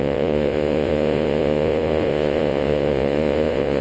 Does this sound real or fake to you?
fake